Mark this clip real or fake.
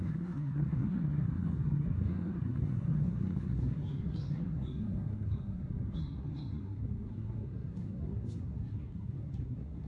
fake